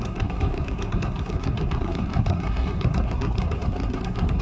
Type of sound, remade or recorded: remade